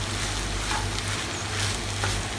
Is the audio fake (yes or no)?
no